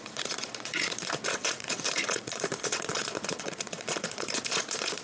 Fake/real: fake